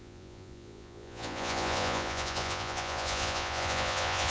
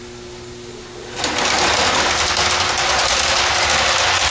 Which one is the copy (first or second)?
first